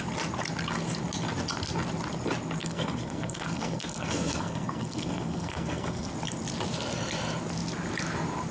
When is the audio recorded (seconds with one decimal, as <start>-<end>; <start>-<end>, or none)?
0.0-2.6; 6.1-8.5